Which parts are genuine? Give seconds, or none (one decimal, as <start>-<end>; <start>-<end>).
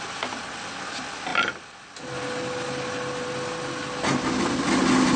0.0-5.2